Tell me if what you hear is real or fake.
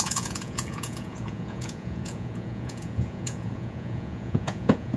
fake